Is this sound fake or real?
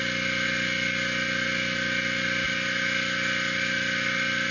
real